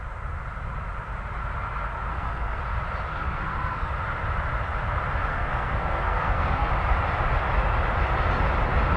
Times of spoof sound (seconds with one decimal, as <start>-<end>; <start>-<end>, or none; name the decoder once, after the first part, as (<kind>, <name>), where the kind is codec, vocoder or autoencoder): 2.1-2.6 (codec, SNAC); 3.1-3.9; 5.3-6.7